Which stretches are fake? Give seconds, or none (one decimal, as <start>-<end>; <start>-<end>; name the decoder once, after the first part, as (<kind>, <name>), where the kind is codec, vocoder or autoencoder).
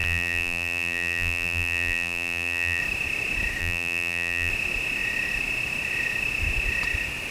0.0-2.8 (vocoder, BigVGAN v2); 3.6-4.5